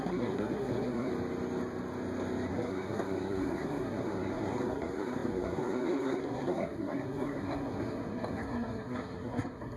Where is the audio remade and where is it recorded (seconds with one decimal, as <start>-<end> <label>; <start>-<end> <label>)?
0.0-1.1 remade; 1.1-2.5 recorded; 2.5-9.8 remade